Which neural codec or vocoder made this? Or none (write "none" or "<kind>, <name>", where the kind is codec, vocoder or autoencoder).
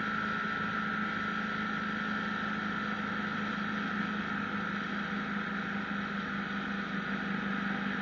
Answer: none